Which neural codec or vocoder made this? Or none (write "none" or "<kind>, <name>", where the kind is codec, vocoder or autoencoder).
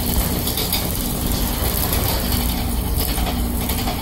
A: none